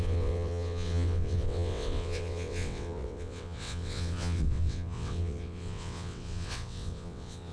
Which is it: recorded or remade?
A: remade